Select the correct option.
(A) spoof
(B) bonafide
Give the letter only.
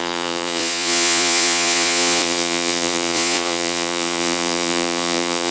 A